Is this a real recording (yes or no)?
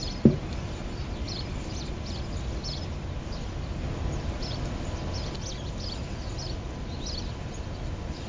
yes